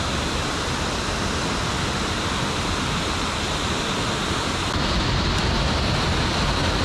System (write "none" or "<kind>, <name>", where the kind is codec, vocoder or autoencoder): none